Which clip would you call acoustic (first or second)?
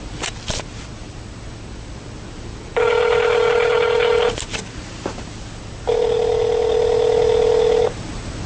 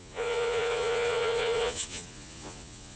first